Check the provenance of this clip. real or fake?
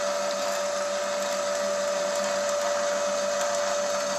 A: real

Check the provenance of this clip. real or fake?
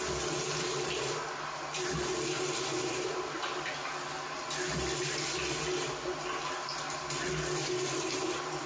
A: real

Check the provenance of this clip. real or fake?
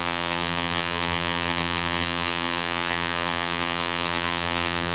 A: fake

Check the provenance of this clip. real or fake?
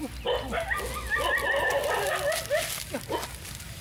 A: real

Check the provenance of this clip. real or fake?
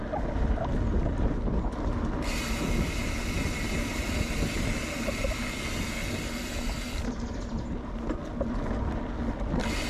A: real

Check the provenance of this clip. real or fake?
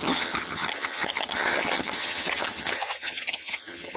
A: fake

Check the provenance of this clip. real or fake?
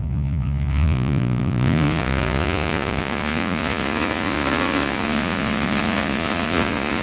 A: fake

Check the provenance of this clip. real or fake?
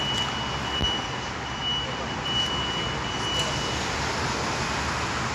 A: real